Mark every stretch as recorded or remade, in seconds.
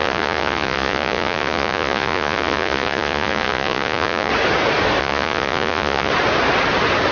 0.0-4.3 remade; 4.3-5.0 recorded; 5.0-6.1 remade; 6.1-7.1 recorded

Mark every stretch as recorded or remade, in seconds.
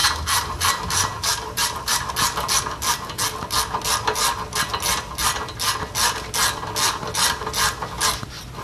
0.0-2.1 remade; 2.1-8.6 recorded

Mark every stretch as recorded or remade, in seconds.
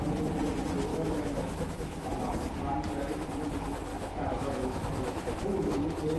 0.0-0.9 recorded; 0.9-2.1 remade; 2.1-3.9 recorded; 3.9-5.8 remade; 5.8-6.2 recorded